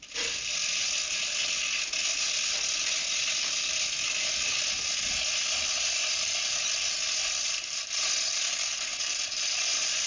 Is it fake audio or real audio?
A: real